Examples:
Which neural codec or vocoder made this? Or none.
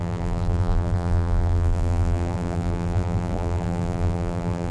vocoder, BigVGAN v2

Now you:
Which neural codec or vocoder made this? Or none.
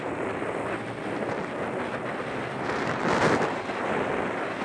vocoder, BigVGAN v2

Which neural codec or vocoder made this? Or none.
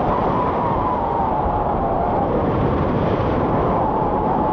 vocoder, BigVGAN v2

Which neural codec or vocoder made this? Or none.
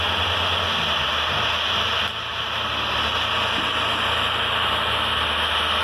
none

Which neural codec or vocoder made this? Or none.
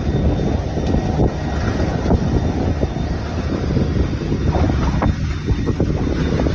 none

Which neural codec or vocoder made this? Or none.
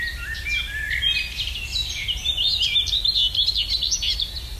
none